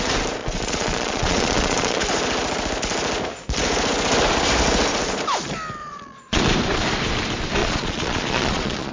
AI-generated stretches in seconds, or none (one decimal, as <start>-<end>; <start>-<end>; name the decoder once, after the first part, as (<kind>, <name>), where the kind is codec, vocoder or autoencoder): 0.4-2.0 (vocoder, Vocos); 5.8-6.4; 7.6-8.9